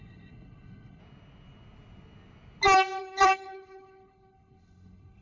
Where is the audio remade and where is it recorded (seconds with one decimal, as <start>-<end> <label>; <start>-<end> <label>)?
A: 0.0-1.0 remade; 1.0-3.0 recorded; 3.0-5.2 remade